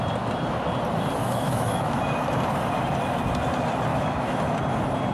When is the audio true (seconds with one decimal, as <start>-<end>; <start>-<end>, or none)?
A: 0.0-1.2; 2.0-3.9; 4.5-5.1